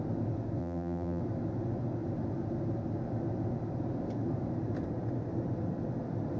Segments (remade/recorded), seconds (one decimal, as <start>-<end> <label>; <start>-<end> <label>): 0.0-0.6 recorded; 0.6-1.2 remade; 1.2-6.4 recorded